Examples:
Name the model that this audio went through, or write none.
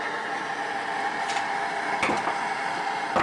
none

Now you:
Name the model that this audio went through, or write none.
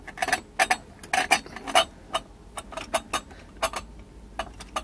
none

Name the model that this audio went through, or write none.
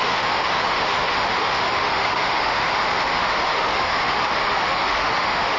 autoencoder, DAC-VAE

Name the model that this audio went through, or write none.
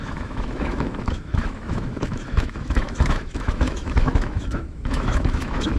autoencoder, DAC-VAE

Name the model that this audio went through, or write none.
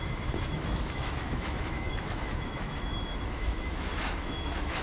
autoencoder, DAC-VAE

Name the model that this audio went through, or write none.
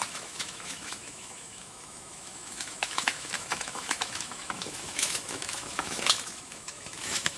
autoencoder, DAC-VAE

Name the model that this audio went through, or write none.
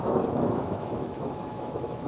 autoencoder, DAC-VAE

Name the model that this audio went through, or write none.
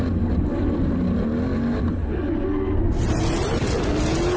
none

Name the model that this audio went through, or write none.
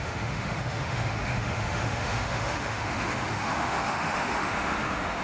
autoencoder, DAC-VAE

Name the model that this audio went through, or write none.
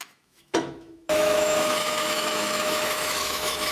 autoencoder, DAC-VAE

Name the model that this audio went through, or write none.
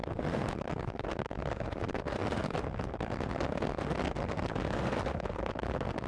autoencoder, DAC-VAE